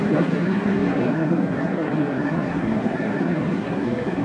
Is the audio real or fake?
fake